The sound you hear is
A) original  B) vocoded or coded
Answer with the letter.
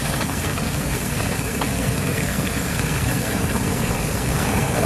B